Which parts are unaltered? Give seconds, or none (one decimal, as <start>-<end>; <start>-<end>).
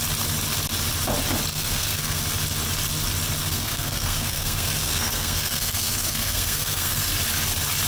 0.0-1.5; 2.2-3.4; 7.1-7.9